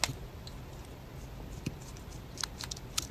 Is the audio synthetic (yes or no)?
no